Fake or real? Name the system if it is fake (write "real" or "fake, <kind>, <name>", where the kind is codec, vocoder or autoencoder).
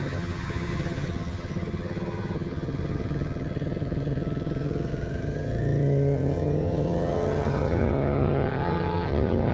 fake, vocoder, HiFi-GAN